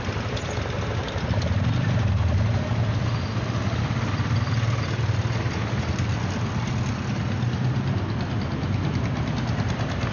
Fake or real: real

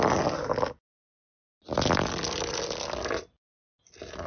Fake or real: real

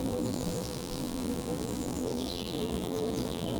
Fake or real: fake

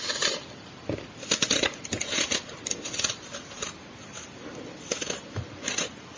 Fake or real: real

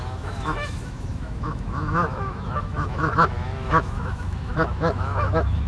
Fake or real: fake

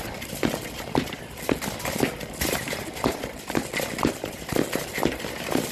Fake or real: real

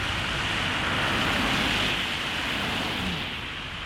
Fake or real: real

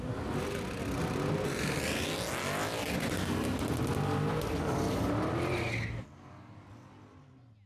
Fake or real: real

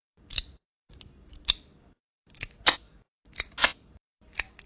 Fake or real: real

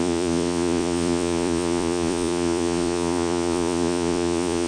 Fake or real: fake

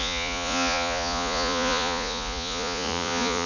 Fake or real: fake